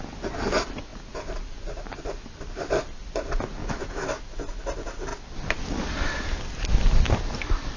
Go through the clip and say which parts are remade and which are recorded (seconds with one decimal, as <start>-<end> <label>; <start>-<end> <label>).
0.0-3.6 recorded; 3.6-4.2 remade; 4.2-7.8 recorded